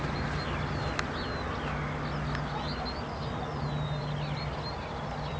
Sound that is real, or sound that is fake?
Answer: real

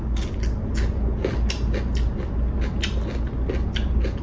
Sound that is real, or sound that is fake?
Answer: real